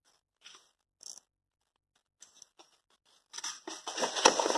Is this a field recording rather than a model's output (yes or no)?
yes